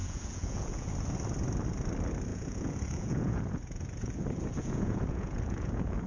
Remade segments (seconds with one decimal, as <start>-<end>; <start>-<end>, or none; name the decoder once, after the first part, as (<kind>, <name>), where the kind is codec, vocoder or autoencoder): 0.0-0.9 (vocoder, Vocos); 2.3-6.1